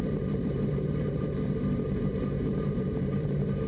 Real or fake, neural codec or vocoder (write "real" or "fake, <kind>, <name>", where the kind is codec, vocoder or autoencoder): fake, vocoder, BigVGAN v2